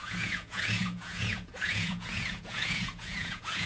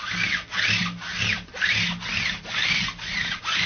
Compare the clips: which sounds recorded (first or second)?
second